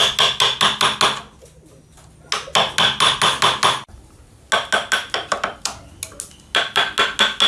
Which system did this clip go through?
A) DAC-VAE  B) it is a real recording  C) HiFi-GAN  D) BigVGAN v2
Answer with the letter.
B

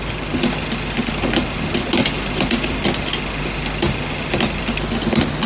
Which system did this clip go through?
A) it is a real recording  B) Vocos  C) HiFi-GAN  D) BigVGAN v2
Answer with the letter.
A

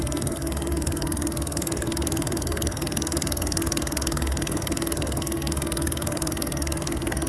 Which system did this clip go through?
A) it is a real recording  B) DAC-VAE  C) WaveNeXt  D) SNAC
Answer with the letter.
D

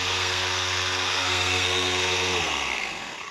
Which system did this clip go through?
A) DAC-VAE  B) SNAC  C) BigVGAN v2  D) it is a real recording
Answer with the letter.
B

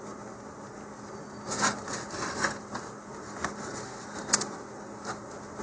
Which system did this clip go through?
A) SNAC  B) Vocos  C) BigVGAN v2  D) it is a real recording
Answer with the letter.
D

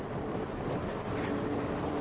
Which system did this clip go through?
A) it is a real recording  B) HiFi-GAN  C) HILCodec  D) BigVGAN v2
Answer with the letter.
A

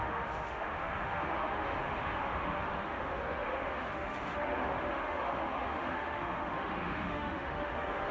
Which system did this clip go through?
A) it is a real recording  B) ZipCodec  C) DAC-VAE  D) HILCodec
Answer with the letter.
C